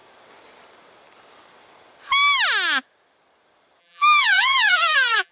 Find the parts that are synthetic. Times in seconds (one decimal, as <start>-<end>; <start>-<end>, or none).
3.8-5.3